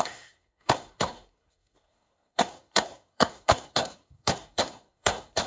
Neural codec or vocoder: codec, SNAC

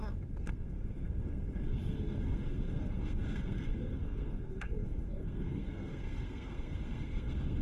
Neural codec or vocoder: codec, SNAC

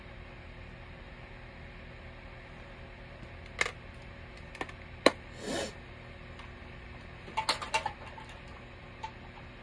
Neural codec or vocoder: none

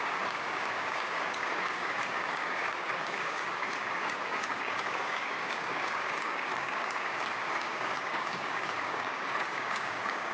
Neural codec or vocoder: codec, DAC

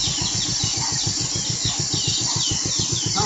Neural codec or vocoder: vocoder, BigVGAN v2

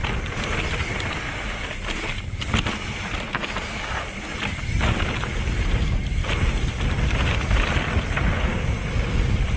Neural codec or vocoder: none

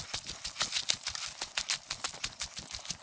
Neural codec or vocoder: none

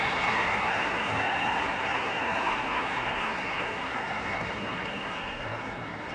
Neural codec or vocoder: codec, SNAC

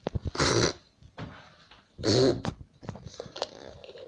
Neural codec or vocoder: none